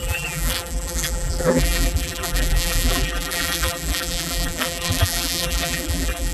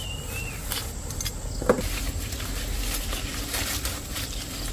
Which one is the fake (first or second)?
first